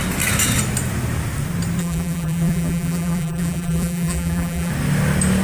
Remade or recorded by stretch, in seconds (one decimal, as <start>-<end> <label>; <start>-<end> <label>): 0.0-1.8 recorded; 1.8-4.7 remade; 4.7-5.4 recorded